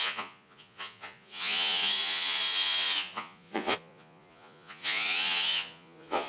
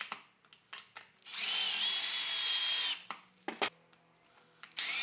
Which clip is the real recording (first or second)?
second